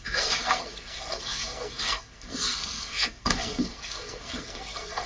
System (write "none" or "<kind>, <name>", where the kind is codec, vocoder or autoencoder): codec, SNAC